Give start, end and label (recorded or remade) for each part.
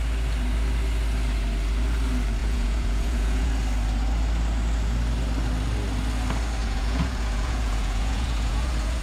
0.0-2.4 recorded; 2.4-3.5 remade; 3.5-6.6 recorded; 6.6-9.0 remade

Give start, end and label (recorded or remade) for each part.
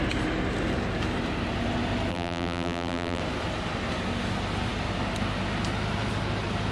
0.0-2.1 recorded; 2.1-3.2 remade; 3.2-6.7 recorded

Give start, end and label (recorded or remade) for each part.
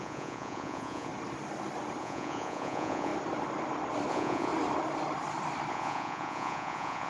0.0-1.1 remade; 1.1-2.0 recorded; 2.0-3.1 remade; 3.1-4.1 recorded; 4.1-4.5 remade; 4.5-5.7 recorded; 5.7-7.1 remade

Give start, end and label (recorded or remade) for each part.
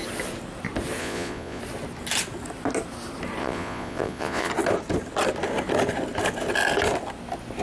0.0-1.0 recorded; 1.0-1.6 remade; 1.6-3.4 recorded; 3.4-4.5 remade; 4.5-7.6 recorded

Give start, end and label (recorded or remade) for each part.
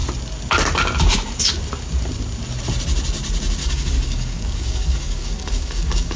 0.0-3.6 recorded; 3.6-6.2 remade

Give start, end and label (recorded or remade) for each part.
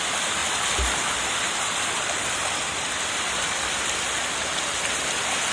0.0-0.4 recorded; 0.4-3.7 remade; 3.7-5.5 recorded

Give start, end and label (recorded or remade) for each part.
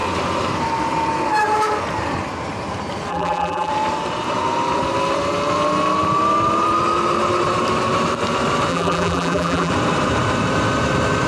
0.0-3.1 recorded; 3.1-3.7 remade; 3.7-8.7 recorded; 8.7-9.7 remade; 9.7-11.3 recorded